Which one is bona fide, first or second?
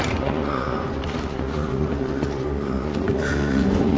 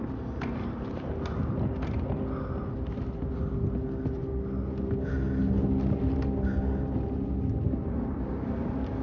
second